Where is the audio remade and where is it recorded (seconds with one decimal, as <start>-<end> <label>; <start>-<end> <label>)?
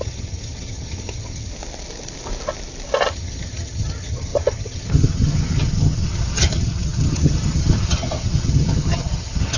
0.0-1.5 remade; 1.5-3.1 recorded; 3.1-9.6 remade